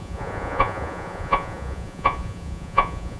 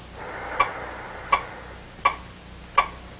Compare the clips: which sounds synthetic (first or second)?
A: first